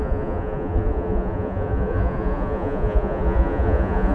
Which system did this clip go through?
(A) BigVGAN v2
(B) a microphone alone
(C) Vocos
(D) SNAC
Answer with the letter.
C